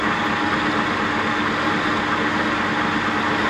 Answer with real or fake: real